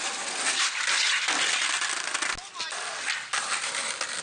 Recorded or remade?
recorded